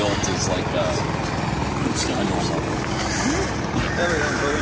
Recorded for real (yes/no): yes